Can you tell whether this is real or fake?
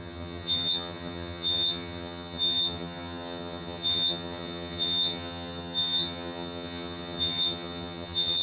fake